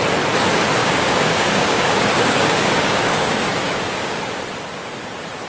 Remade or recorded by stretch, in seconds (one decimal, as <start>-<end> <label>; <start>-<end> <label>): 0.0-0.8 recorded; 0.8-4.1 remade; 4.1-5.5 recorded

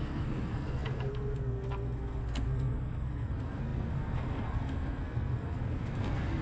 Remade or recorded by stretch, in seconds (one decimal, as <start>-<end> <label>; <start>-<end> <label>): 0.0-6.4 remade

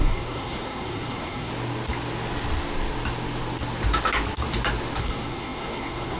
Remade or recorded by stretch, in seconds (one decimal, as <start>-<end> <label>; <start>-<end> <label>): 0.0-1.5 remade; 1.5-5.0 recorded; 5.0-6.2 remade

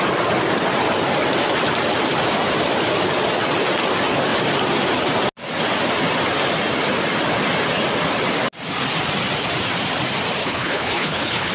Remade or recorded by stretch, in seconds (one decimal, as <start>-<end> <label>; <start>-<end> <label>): 0.0-10.4 recorded; 10.4-11.5 remade

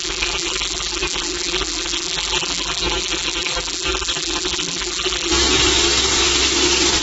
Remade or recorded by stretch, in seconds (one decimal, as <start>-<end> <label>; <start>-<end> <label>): 0.0-5.3 remade; 5.3-7.0 recorded

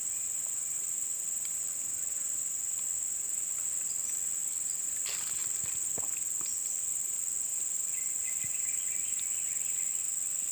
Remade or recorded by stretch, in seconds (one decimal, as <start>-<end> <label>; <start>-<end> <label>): 0.0-7.5 recorded; 7.5-8.7 remade; 8.7-10.5 recorded

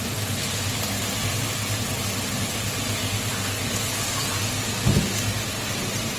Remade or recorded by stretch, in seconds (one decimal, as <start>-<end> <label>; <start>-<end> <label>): 0.0-6.2 recorded